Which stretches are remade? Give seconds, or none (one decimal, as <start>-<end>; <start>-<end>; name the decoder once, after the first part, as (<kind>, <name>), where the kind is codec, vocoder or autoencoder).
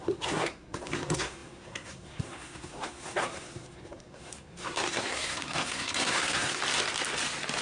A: 0.0-6.6 (codec, SNAC)